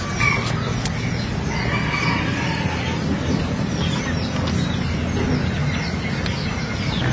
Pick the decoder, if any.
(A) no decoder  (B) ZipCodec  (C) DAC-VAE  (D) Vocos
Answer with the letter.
A